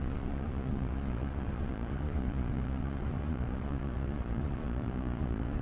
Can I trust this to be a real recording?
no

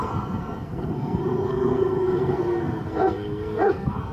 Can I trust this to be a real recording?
no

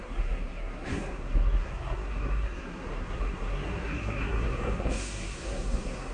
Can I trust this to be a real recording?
no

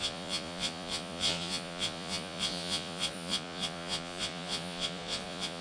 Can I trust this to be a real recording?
no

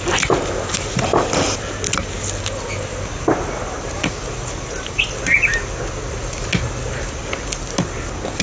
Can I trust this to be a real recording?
yes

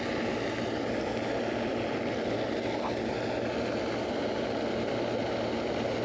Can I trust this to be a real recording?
yes